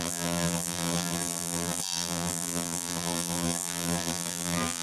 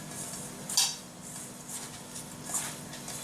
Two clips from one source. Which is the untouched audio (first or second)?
second